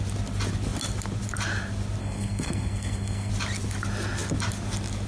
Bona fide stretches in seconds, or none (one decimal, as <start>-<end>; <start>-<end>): 0.0-2.0; 3.3-5.1

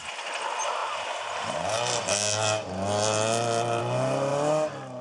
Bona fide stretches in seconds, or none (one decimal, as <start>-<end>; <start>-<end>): 0.0-5.0